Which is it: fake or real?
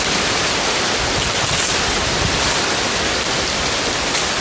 real